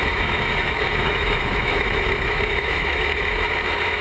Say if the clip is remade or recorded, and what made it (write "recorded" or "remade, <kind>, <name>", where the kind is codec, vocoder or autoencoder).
remade, autoencoder, DAC-VAE